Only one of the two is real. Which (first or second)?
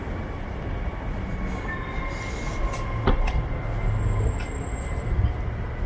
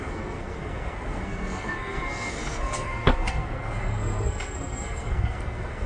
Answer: first